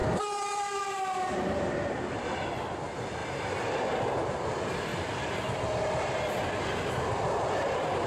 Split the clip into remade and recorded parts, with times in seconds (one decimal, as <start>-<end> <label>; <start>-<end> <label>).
0.0-0.8 remade; 0.8-4.9 recorded; 4.9-5.4 remade; 5.4-8.1 recorded